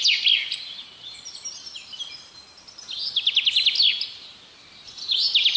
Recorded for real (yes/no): yes